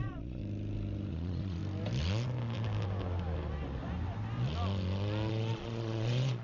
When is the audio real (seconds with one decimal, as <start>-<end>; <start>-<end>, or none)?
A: 0.4-1.1; 1.6-5.3